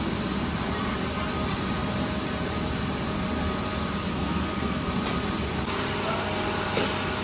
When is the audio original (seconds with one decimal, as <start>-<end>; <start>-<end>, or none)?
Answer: 0.0-4.1; 4.8-7.2